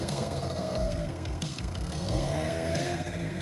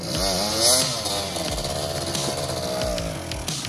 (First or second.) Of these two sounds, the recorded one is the second